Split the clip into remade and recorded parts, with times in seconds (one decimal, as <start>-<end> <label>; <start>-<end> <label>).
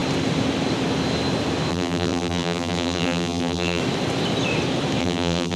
0.0-1.7 recorded; 1.7-3.8 remade; 3.8-5.0 recorded; 5.0-5.6 remade